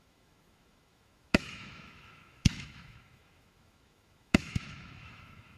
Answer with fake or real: fake